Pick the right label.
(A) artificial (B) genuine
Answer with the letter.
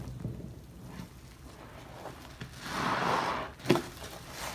B